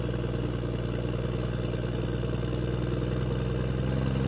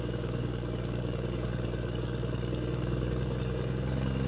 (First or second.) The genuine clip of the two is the first